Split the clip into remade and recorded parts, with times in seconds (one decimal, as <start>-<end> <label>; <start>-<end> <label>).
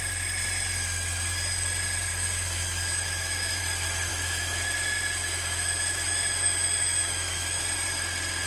0.0-2.1 recorded; 2.1-3.6 remade; 3.6-4.1 recorded; 4.1-7.6 remade; 7.6-8.5 recorded